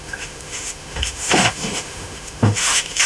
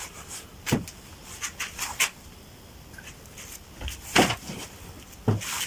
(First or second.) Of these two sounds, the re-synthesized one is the first